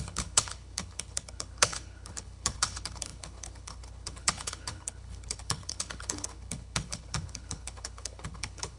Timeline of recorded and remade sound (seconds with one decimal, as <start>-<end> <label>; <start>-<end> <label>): 0.0-8.8 remade